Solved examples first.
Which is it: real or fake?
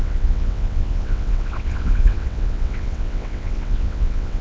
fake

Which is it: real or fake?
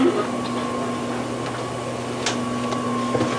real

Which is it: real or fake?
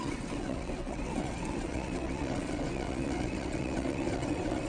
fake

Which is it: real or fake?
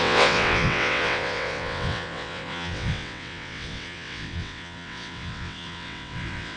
fake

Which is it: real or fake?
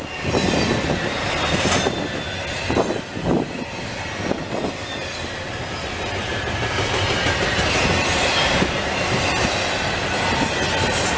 real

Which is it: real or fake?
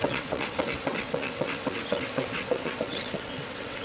fake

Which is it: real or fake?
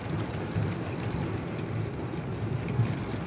real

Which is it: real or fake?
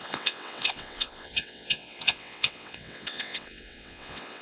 fake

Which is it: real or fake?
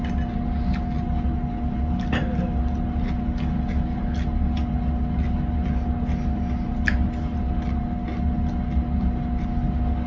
real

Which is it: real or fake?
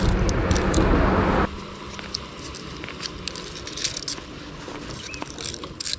real